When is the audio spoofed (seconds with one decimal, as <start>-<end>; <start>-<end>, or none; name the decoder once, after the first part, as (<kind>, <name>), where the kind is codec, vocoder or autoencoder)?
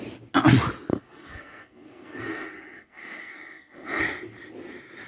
0.9-4.0 (codec, SNAC)